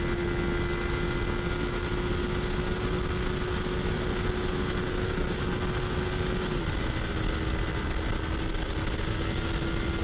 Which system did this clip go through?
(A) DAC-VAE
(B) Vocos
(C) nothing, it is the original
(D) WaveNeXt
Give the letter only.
C